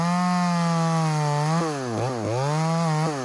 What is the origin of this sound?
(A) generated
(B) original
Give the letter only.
B